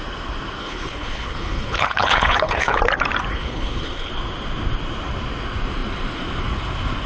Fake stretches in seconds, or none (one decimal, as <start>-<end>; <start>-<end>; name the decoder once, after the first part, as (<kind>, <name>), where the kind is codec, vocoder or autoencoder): 0.6-2.8 (codec, HILCodec); 3.3-4.1